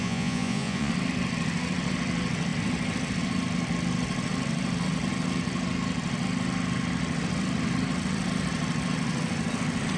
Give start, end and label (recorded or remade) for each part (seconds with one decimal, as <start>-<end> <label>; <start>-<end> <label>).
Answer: 0.0-0.9 remade; 0.9-10.0 recorded